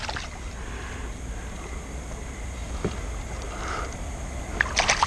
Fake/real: real